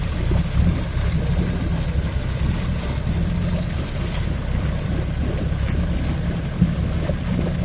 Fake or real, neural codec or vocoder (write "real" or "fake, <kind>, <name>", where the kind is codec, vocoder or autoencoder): real